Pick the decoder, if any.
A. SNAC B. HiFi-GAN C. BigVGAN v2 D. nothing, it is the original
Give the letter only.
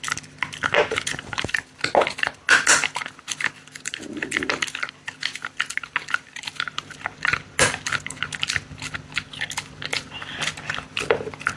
D